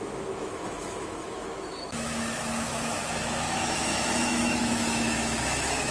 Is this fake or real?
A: fake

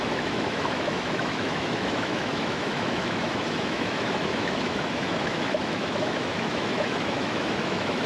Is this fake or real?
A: fake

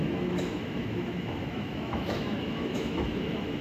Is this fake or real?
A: fake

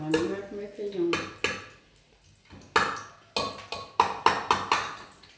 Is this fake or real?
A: real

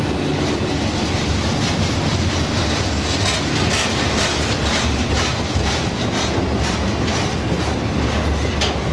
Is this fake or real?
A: real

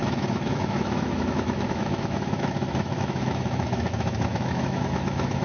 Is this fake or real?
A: fake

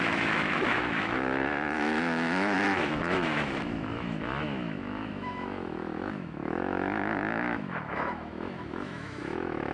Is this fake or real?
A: fake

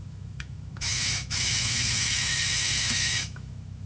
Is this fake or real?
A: fake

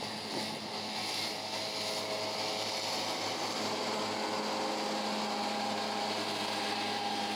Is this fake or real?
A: real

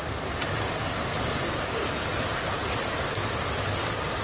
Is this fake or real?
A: real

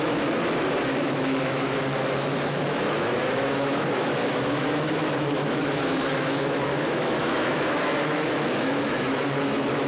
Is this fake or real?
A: fake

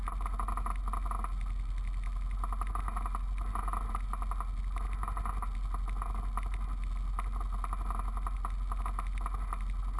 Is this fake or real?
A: real